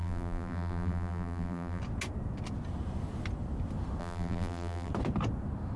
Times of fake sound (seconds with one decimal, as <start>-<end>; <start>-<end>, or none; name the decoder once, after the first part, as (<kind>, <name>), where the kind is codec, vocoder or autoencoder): 0.0-1.8 (vocoder, BigVGAN v2); 4.0-4.9